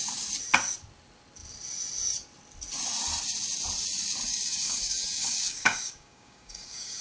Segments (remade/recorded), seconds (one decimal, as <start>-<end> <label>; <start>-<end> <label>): 0.0-4.3 recorded; 4.3-7.0 remade